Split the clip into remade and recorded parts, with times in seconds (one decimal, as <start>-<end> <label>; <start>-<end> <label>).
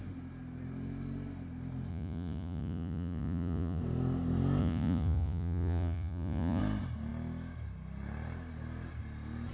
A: 0.0-1.9 recorded; 1.9-3.8 remade; 3.8-4.6 recorded; 4.6-6.6 remade; 6.6-9.5 recorded